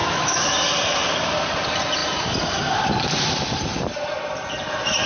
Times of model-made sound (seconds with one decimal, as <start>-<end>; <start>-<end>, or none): 0.0-0.5